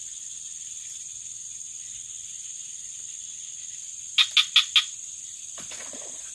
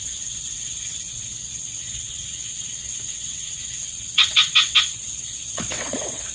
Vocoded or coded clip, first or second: second